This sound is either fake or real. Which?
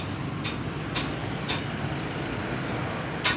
real